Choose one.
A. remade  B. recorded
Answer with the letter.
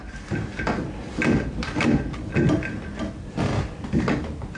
B